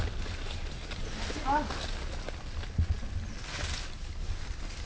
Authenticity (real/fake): real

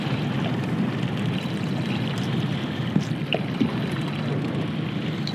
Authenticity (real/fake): real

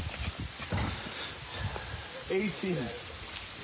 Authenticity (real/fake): real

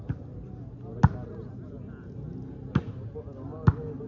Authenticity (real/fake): real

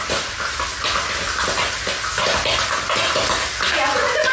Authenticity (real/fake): real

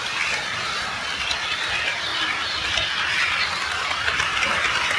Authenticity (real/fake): real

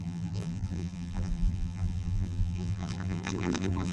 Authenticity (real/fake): fake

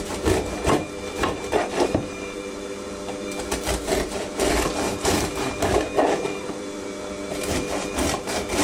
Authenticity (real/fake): fake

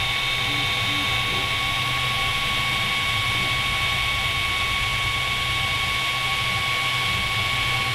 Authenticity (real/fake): real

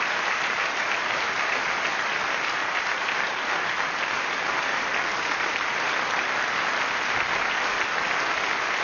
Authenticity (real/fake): fake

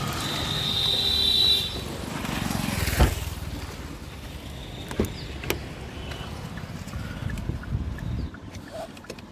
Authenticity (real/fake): real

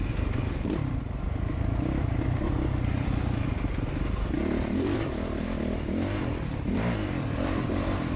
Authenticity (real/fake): fake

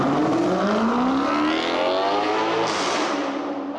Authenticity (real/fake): real